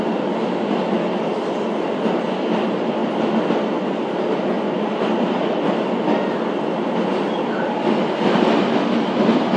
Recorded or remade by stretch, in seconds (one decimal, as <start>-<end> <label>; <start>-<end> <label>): 0.0-9.6 recorded